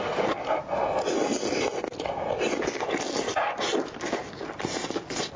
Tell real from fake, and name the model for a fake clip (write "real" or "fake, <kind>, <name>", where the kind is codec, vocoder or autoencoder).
real